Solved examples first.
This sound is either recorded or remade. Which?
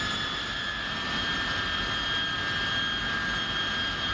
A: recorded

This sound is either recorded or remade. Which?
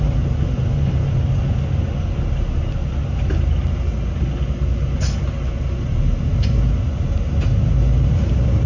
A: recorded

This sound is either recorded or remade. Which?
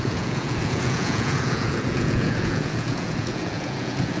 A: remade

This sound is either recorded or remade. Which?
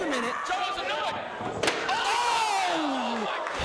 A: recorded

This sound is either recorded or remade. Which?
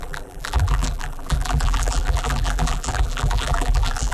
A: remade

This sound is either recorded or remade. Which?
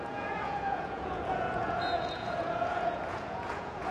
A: remade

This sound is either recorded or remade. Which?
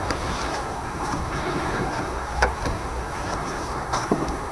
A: remade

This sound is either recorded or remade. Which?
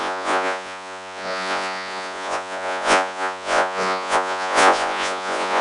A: remade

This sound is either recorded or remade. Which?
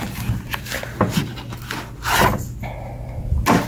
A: recorded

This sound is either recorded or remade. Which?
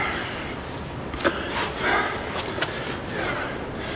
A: recorded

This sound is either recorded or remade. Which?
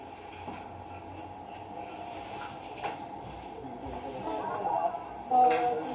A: recorded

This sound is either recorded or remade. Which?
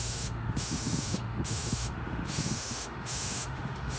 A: remade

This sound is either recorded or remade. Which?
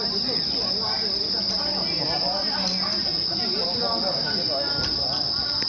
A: recorded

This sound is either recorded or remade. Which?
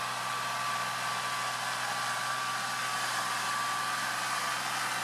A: recorded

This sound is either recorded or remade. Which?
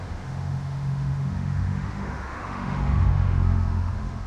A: remade